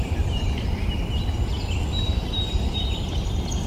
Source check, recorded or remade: remade